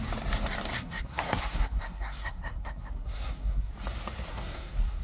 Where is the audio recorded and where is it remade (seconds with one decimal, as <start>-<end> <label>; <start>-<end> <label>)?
0.0-0.7 recorded; 0.7-3.7 remade; 3.7-4.3 recorded; 4.3-5.0 remade